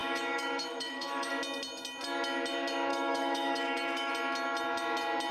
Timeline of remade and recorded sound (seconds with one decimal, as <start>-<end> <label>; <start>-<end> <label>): 0.0-1.3 remade; 1.3-2.9 recorded; 2.9-4.1 remade; 4.1-5.3 recorded